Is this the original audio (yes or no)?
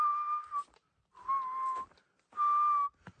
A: yes